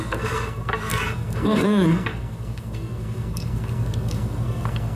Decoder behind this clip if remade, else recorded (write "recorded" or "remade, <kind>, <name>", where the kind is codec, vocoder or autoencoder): remade, codec, SNAC